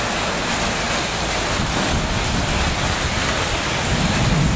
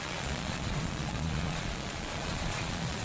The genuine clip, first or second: first